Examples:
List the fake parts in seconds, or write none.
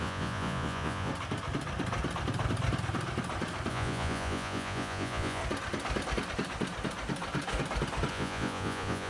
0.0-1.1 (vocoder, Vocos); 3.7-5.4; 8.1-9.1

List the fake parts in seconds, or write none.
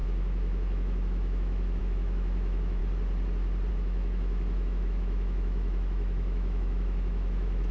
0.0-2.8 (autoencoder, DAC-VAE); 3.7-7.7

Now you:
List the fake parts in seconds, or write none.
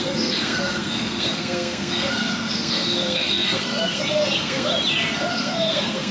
0.0-4.7 (codec, SNAC); 5.3-6.1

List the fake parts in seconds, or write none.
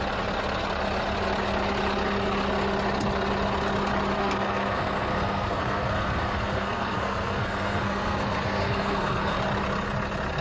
4.2-9.4 (codec, SNAC)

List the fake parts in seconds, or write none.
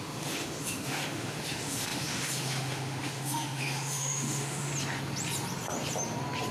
0.0-4.7 (autoencoder, DAC-VAE)